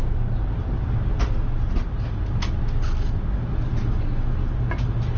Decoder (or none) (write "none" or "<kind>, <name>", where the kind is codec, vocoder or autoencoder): none